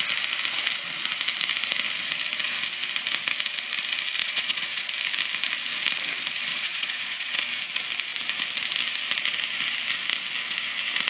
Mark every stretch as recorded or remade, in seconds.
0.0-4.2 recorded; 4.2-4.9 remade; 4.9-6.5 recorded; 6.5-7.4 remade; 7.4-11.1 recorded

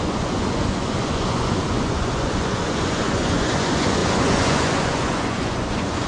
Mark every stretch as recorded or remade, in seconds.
0.0-6.1 remade

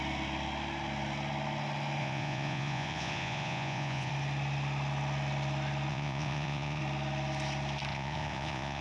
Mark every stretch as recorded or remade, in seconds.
0.0-2.0 recorded; 2.0-4.1 remade; 4.1-5.9 recorded; 5.9-6.8 remade; 6.8-7.9 recorded; 7.9-8.8 remade